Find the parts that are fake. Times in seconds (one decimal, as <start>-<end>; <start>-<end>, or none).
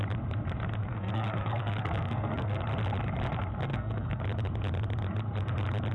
0.8-2.6; 3.7-4.2